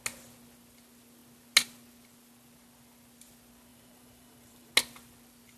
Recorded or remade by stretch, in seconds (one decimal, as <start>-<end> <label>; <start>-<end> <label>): 0.0-3.7 recorded; 3.7-4.7 remade; 4.7-5.6 recorded

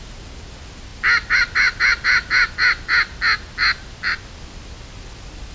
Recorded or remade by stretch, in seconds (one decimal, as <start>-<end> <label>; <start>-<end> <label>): 0.0-5.5 recorded